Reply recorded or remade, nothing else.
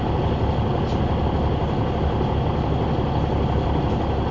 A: recorded